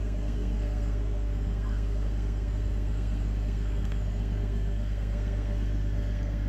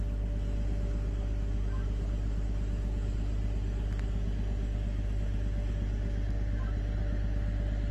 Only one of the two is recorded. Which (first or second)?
second